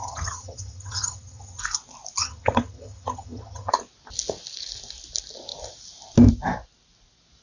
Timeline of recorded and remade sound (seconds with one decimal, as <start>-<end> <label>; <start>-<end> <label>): 0.0-1.6 remade; 1.6-2.2 recorded; 2.2-3.7 remade; 3.7-7.4 recorded